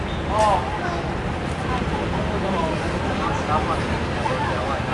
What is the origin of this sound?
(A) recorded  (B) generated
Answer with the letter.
B